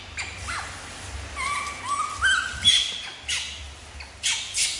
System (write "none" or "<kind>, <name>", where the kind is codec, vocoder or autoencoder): none